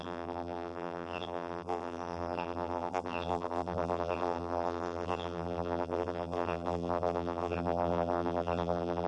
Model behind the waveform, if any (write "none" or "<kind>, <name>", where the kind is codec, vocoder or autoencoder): vocoder, BigVGAN v2